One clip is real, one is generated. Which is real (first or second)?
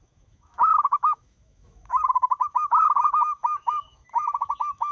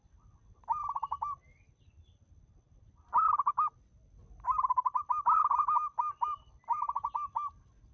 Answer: second